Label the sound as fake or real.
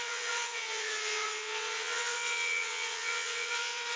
fake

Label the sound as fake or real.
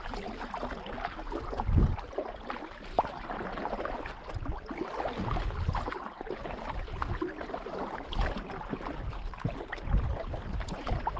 real